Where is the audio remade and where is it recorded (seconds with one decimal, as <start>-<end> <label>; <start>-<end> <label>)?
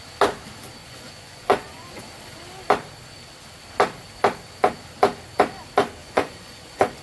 0.0-0.8 recorded; 0.8-2.0 remade; 2.0-6.0 recorded; 6.0-7.0 remade